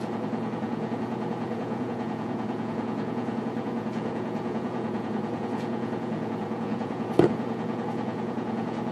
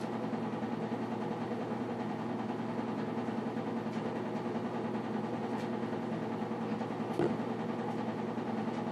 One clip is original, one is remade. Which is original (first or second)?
second